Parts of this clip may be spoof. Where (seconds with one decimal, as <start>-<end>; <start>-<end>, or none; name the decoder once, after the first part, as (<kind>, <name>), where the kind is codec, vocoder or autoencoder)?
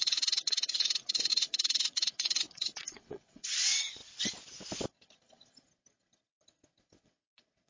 0.0-4.0 (vocoder, WaveNeXt); 7.0-7.7